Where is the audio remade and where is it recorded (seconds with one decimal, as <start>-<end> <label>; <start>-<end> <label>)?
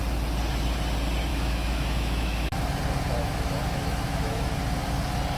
0.0-1.3 recorded; 1.3-2.6 remade; 2.6-3.2 recorded; 3.2-4.6 remade; 4.6-5.4 recorded